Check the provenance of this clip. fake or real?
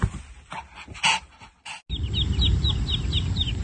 real